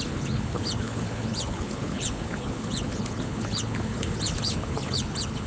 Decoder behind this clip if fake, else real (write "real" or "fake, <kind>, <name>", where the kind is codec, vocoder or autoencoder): fake, codec, HILCodec